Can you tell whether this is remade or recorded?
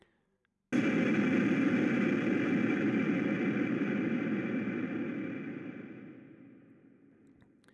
recorded